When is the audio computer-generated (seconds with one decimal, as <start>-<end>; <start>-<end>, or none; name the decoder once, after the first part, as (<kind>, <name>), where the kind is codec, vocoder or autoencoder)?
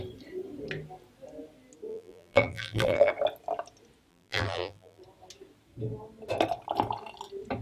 1.9-3.1 (vocoder, BigVGAN v2); 4.1-5.0